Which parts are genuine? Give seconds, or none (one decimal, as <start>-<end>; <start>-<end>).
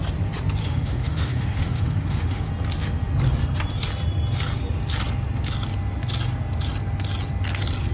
0.0-0.6; 2.5-7.9